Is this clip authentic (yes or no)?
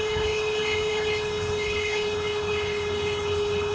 no